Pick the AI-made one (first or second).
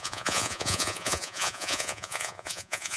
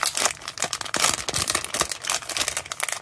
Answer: first